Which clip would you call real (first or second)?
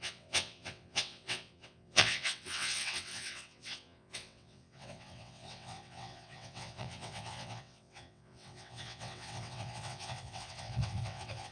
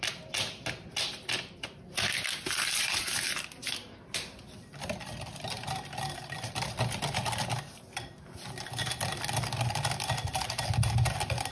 second